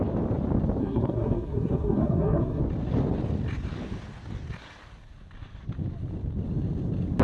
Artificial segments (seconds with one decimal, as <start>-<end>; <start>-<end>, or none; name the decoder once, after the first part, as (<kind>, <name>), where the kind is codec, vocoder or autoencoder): 0.8-2.6 (codec, SNAC)